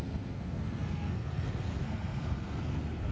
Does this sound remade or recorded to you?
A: remade